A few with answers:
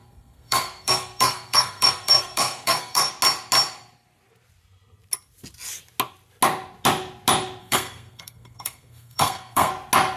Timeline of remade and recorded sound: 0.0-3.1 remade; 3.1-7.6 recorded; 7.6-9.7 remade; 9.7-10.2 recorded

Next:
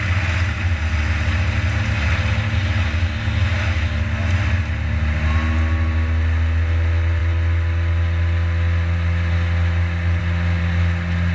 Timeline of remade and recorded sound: 0.0-11.3 recorded

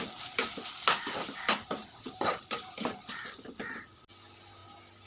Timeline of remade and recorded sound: 0.0-1.8 recorded; 1.8-3.1 remade; 3.1-5.1 recorded

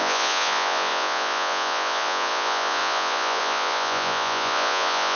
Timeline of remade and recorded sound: 0.0-5.2 remade

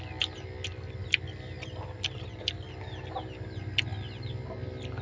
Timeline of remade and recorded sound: 0.0-5.0 recorded

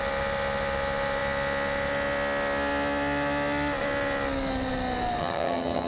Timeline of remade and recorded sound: 0.0-5.2 recorded; 5.2-5.9 remade